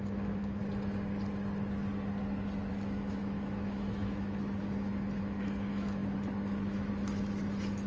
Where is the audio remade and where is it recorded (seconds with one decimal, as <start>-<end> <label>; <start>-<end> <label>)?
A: 0.0-0.6 remade; 0.6-2.7 recorded; 2.7-7.9 remade